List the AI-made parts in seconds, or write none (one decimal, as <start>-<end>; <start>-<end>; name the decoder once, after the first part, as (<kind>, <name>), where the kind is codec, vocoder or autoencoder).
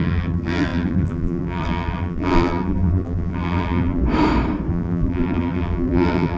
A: 0.0-4.0 (vocoder, BigVGAN v2); 4.7-6.4